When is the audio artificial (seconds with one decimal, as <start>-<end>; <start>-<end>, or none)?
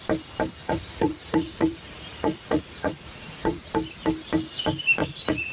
0.6-3.7; 5.0-5.5